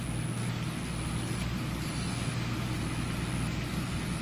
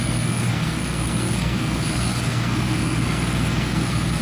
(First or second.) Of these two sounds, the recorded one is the first